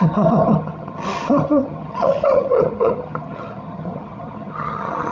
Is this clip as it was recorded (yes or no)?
no